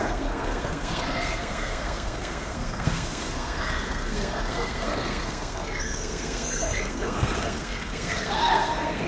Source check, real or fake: fake